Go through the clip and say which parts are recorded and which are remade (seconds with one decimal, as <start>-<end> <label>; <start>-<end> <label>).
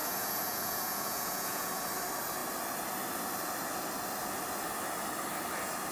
0.0-1.7 remade; 1.7-5.9 recorded